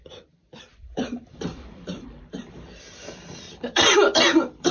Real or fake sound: fake